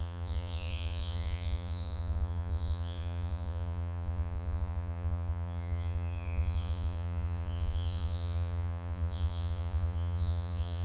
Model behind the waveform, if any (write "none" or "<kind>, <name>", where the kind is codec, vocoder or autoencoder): vocoder, Vocos